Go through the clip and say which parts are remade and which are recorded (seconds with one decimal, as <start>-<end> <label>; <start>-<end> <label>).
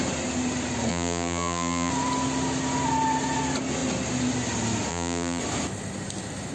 0.0-0.9 recorded; 0.9-1.9 remade; 1.9-4.9 recorded; 4.9-5.4 remade; 5.4-6.5 recorded